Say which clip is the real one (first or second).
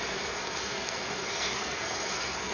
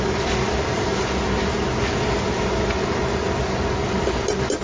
second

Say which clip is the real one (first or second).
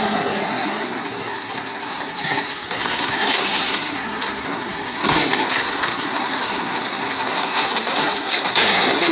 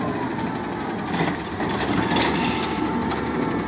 second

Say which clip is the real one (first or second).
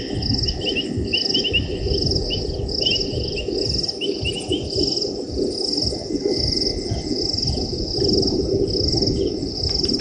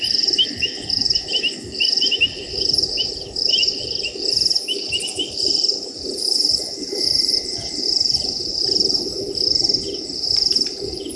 first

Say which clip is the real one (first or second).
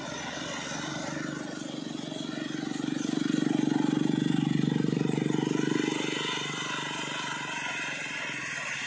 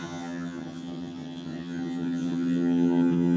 first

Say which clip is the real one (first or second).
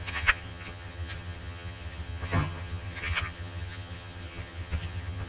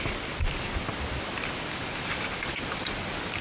second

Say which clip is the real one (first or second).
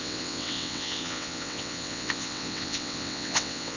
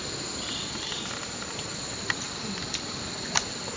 second